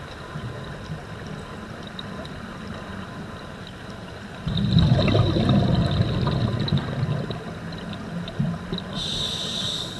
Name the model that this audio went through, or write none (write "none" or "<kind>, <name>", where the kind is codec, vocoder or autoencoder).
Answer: none